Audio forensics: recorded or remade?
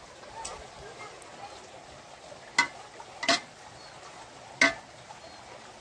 recorded